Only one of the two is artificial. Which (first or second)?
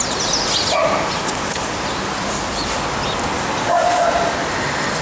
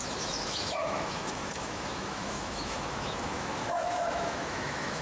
second